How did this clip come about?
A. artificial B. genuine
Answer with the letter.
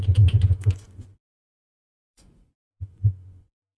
A